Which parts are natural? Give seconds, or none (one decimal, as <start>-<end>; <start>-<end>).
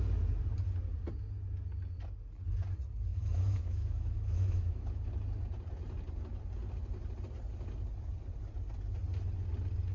0.0-3.1; 5.1-9.9